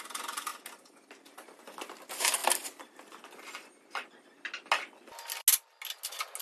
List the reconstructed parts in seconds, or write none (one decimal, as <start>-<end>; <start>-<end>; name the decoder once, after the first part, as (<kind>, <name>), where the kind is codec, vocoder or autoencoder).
none